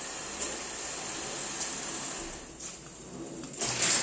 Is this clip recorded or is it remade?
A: recorded